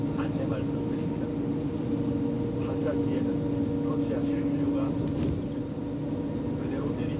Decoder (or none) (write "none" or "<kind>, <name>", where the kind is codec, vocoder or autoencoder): none